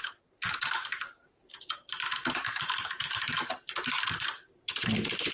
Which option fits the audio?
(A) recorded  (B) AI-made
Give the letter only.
B